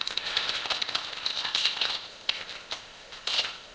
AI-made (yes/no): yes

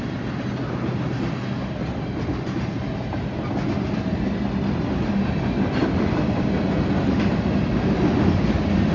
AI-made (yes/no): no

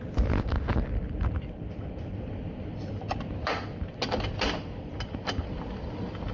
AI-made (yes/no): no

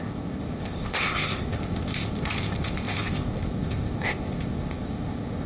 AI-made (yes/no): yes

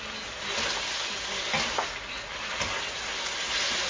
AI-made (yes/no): no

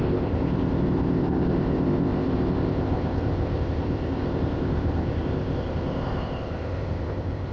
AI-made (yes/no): yes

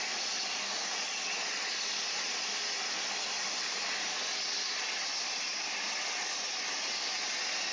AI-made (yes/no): no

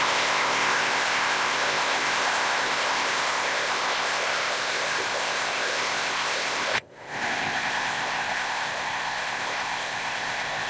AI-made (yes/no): yes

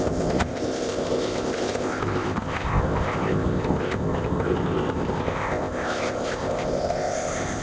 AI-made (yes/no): yes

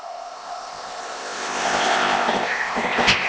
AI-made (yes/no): yes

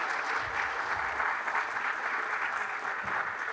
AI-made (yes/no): no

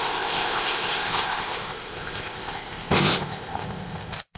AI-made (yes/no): yes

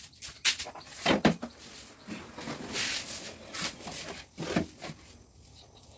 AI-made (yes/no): no